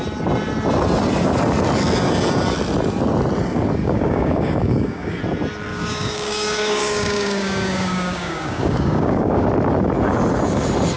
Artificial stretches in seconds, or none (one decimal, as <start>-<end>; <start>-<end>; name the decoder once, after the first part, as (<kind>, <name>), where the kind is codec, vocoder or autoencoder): 3.8-5.2 (codec, DAC); 5.7-9.5